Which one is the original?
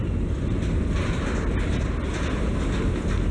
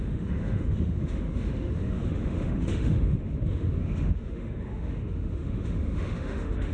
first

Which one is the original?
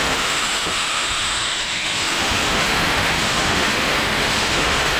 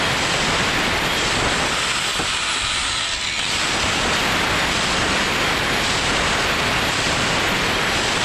second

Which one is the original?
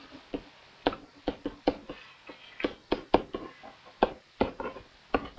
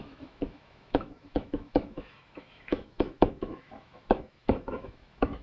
first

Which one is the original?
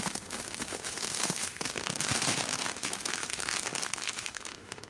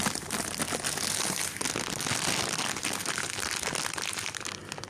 second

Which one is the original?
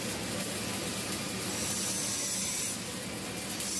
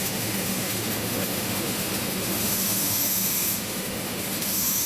first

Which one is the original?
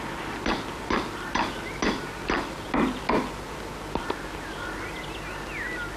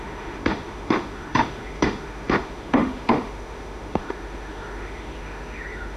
first